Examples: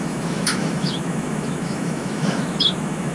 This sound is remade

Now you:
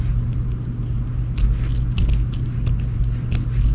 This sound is recorded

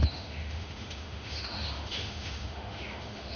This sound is remade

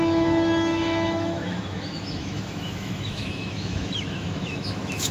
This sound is remade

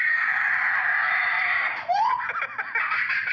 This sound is recorded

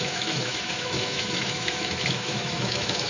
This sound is remade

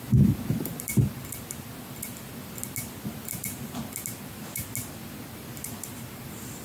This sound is recorded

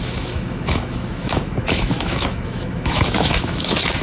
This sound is remade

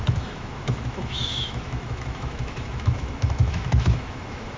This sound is remade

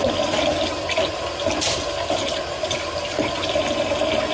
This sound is recorded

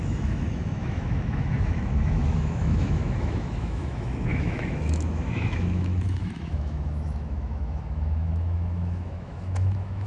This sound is remade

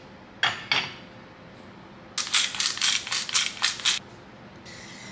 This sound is recorded